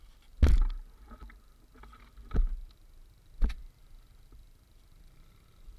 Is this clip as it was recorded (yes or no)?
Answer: yes